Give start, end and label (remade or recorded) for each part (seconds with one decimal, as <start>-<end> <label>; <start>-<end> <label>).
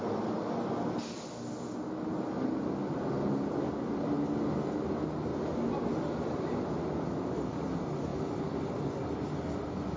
0.0-10.0 recorded